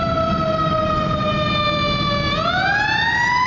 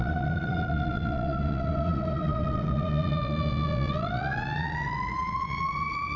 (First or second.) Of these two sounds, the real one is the first